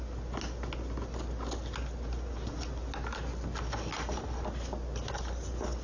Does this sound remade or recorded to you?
recorded